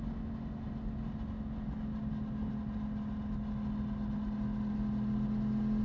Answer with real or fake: real